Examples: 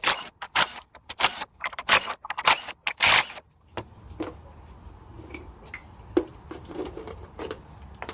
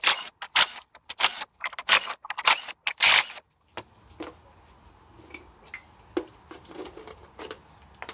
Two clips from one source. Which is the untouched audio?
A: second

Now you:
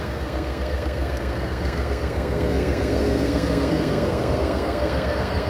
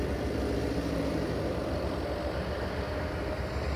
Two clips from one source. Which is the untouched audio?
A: second